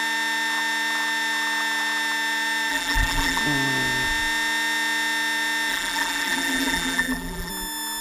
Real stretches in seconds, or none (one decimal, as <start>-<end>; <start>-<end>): 0.0-2.7; 3.4-5.7; 7.5-8.0